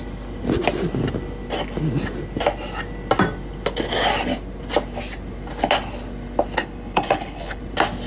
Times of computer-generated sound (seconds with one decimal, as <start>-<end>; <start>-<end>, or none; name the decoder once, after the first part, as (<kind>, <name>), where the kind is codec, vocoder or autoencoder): 6.6-7.6 (codec, HILCodec)